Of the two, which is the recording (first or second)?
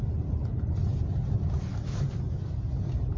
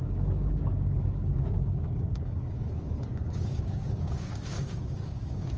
first